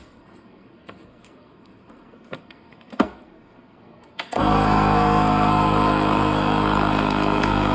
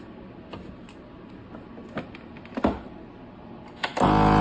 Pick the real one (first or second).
second